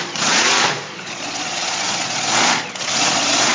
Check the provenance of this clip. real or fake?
fake